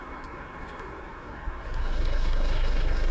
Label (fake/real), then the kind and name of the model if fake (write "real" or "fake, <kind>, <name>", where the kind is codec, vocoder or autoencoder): fake, codec, SNAC